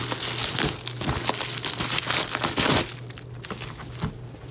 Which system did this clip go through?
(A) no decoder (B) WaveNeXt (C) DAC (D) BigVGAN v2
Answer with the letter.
A